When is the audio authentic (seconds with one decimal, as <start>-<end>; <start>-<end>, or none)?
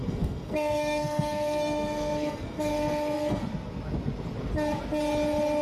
3.4-5.6